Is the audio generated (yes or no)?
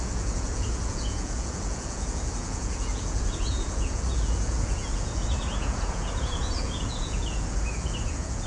yes